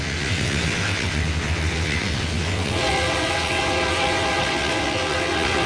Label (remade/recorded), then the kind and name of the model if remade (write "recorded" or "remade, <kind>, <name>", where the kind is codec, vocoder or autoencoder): remade, vocoder, WaveNeXt